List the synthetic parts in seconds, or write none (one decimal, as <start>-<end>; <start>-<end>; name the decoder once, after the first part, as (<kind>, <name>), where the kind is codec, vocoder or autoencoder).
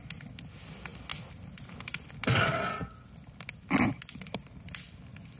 none